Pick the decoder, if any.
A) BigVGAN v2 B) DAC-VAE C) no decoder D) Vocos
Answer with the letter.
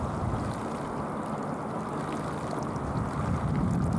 C